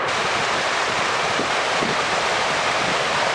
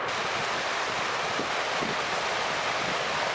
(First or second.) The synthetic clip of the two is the first